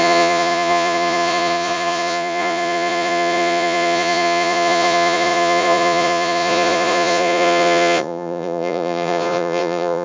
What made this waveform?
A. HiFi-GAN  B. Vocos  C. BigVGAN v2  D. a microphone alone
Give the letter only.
B